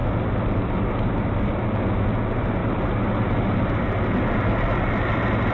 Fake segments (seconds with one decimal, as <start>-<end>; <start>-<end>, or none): 0.0-2.0; 2.6-3.8